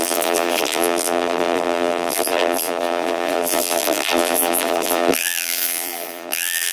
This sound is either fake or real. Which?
fake